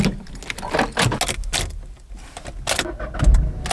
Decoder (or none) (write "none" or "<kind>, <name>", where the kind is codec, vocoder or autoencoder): none